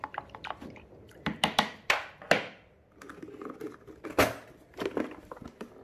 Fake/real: real